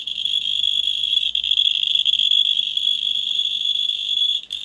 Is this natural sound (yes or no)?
yes